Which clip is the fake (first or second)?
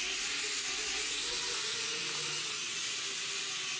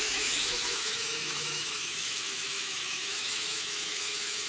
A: second